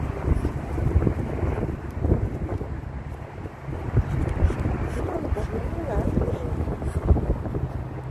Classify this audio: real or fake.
real